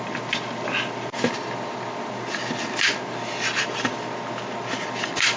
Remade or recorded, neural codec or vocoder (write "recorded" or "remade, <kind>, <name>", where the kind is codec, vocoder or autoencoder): recorded